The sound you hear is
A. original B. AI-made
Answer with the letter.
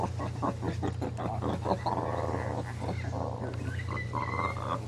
A